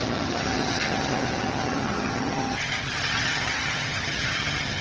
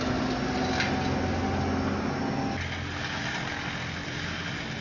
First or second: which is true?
second